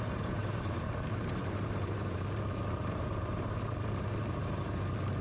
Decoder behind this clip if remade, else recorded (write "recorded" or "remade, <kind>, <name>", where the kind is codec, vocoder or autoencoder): remade, vocoder, BigVGAN v2